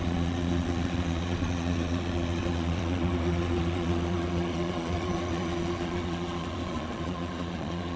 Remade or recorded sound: remade